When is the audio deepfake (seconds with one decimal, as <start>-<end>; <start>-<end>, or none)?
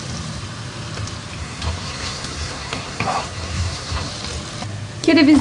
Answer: 1.4-4.1